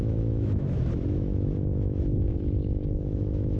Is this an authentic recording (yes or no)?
no